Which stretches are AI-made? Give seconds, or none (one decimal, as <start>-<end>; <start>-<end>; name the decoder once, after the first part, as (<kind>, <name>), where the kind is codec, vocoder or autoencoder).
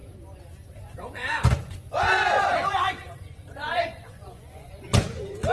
0.8-5.5 (vocoder, Vocos)